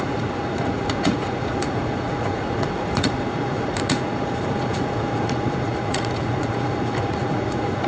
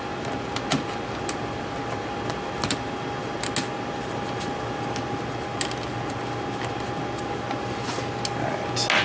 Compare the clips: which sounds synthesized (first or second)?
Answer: first